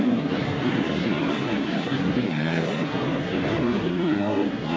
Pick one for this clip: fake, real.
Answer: fake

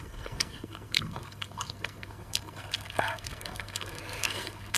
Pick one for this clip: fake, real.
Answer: fake